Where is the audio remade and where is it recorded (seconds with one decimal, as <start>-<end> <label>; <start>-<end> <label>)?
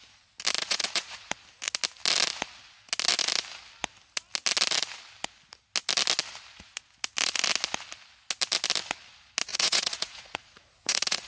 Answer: 0.0-0.6 recorded; 0.6-1.3 remade; 1.3-9.5 recorded; 9.5-11.3 remade